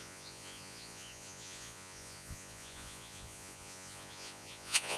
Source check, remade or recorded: remade